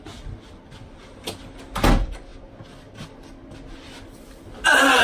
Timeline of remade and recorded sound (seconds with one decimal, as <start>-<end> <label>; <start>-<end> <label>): 0.0-5.0 recorded